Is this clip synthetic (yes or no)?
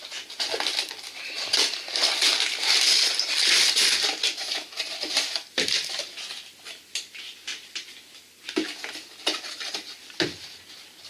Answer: no